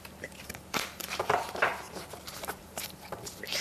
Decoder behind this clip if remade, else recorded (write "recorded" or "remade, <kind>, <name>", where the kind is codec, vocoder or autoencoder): remade, vocoder, BigVGAN v2